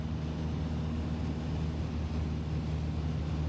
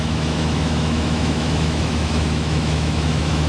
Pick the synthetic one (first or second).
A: second